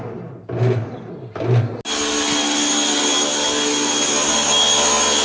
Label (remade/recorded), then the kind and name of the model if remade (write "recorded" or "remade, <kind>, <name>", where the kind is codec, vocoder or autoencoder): recorded